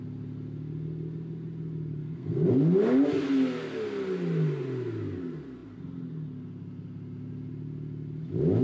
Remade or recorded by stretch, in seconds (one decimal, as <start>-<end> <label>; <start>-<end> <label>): 0.0-2.0 recorded; 2.0-2.5 remade; 2.5-8.6 recorded